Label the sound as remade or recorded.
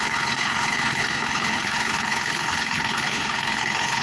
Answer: remade